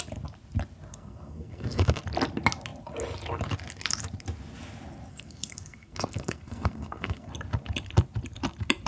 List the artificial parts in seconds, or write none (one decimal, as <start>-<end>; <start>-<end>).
0.9-2.0; 5.1-7.3